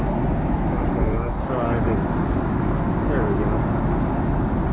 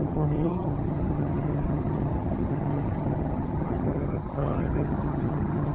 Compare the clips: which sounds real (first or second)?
first